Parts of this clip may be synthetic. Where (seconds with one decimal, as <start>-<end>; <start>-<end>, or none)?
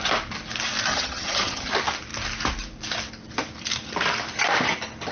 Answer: 0.9-1.7